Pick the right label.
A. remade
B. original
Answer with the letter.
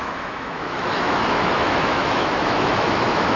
A